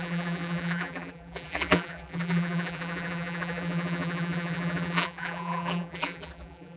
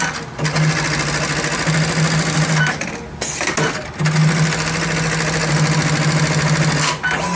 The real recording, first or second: second